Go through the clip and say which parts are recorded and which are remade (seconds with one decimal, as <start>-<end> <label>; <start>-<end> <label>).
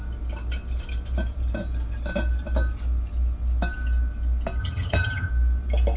0.0-4.6 recorded; 4.6-5.3 remade; 5.3-6.0 recorded